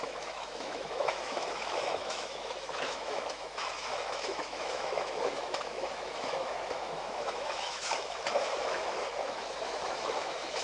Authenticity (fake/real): fake